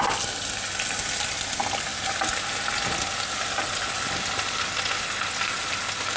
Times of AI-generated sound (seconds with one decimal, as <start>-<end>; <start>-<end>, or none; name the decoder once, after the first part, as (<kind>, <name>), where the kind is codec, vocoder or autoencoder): none